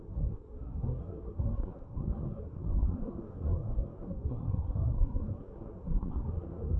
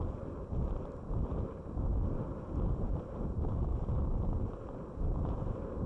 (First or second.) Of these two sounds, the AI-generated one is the first